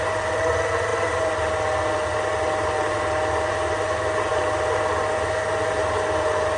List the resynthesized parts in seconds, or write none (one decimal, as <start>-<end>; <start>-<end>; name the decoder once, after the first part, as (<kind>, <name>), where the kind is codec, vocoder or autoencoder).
none